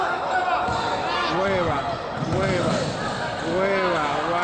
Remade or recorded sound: recorded